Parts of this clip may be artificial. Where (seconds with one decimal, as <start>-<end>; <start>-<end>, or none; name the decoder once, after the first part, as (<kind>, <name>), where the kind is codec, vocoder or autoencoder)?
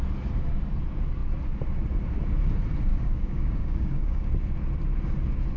2.9-4.3 (codec, DAC)